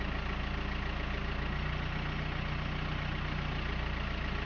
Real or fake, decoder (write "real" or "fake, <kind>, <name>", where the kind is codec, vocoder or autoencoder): real